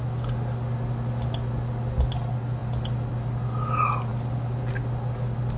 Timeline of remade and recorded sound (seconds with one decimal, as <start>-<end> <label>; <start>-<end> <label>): 0.0-5.6 recorded

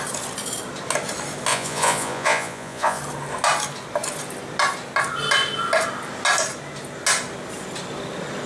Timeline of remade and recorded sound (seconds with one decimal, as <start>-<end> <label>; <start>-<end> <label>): 0.0-1.5 recorded; 1.5-3.0 remade; 3.0-8.5 recorded

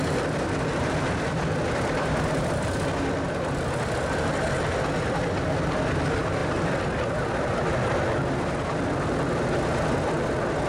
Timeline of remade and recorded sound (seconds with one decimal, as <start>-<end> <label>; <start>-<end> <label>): 0.0-10.7 recorded

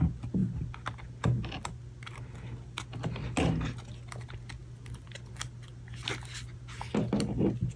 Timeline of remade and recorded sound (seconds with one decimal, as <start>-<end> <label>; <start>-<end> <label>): 0.0-7.8 recorded